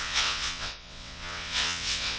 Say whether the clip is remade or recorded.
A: remade